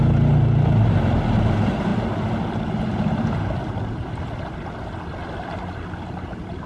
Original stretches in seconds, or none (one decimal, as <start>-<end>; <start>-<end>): 0.0-6.7